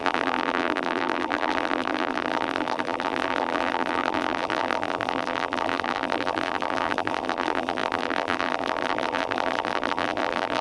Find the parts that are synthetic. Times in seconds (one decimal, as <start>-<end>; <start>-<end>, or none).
0.0-10.6